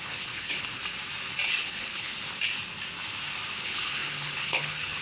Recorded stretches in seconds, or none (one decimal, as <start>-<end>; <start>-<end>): 0.8-1.6; 2.1-3.6